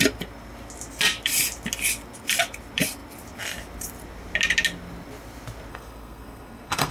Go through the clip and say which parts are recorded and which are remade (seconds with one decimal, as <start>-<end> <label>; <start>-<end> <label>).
0.0-5.7 recorded; 5.7-6.9 remade